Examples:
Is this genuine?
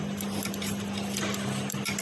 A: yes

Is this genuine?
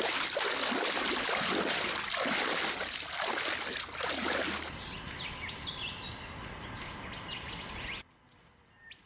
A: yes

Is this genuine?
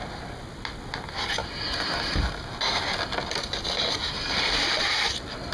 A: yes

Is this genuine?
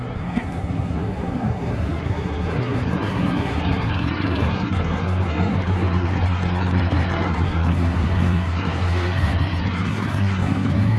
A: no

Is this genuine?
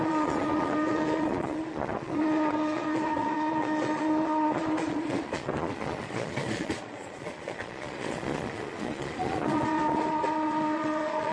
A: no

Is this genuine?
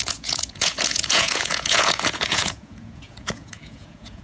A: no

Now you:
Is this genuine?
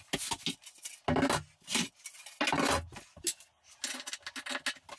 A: yes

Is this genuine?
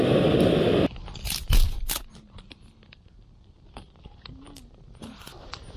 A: yes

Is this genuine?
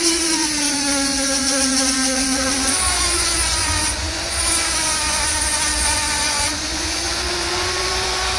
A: no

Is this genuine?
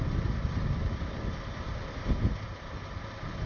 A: yes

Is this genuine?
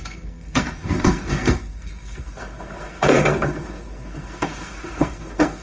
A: no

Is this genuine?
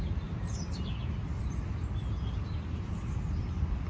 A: yes